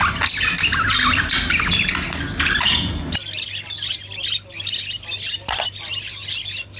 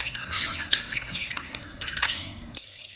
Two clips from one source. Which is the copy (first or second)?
second